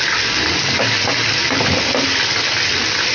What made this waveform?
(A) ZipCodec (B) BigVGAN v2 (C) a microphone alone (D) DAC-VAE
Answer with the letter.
C